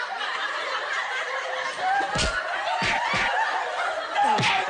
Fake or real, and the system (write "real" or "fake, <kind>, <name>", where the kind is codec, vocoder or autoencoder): real